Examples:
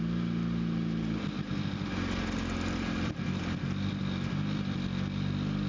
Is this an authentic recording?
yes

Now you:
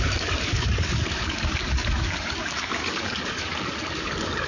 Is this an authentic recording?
no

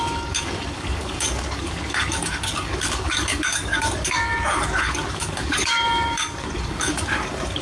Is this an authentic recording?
no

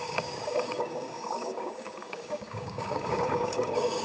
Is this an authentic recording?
no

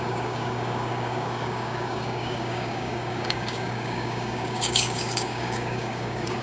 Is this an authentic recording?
no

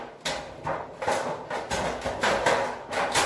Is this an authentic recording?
yes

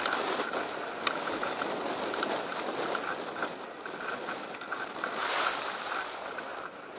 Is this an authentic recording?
yes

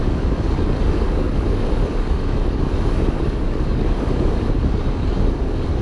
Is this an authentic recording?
no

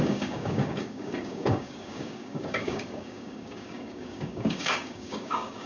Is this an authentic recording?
no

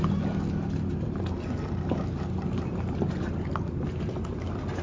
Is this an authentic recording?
yes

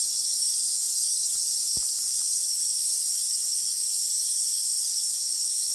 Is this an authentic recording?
no